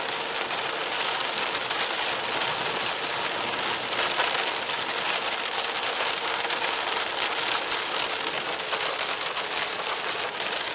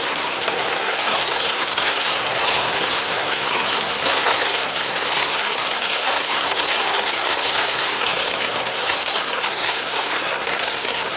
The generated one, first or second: second